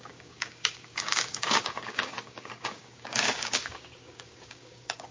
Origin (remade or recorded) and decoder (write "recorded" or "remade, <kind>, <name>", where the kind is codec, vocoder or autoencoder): remade, codec, DAC